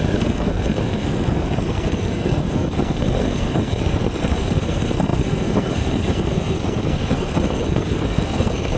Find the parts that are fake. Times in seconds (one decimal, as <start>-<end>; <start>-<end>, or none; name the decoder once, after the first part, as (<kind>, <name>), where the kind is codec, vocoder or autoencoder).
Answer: 0.0-8.8 (codec, SNAC)

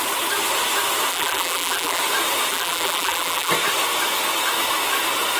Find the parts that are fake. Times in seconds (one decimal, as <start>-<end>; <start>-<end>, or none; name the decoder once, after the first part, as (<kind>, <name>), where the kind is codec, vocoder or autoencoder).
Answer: 1.1-2.0 (vocoder, BigVGAN v2); 2.5-3.5